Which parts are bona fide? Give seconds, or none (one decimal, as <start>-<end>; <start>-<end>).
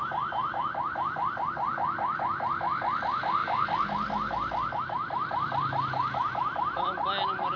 0.0-0.4; 1.5-7.6